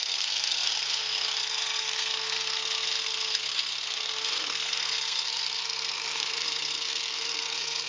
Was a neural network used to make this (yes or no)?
yes